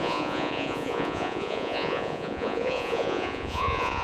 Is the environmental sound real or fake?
fake